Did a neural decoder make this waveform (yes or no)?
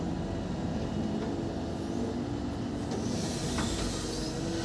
no